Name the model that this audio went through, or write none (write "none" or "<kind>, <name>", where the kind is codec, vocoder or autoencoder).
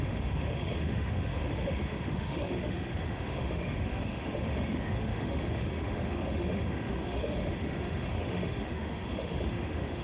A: autoencoder, DAC-VAE